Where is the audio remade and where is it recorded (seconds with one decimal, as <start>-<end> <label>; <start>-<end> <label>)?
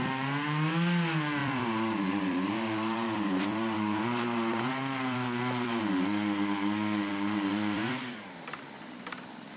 0.0-1.4 recorded; 1.4-5.8 remade; 5.8-7.1 recorded; 7.1-8.8 remade; 8.8-9.6 recorded